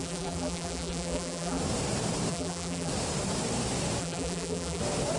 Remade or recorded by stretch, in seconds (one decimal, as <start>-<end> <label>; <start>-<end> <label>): 0.0-1.6 remade; 1.6-2.3 recorded; 2.3-2.9 remade; 2.9-4.0 recorded; 4.0-4.8 remade; 4.8-5.2 recorded